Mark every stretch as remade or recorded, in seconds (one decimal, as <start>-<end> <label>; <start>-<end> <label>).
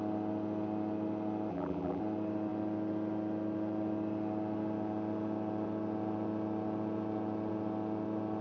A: 0.0-1.5 recorded; 1.5-2.0 remade; 2.0-8.4 recorded